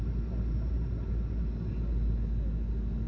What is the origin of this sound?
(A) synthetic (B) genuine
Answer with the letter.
B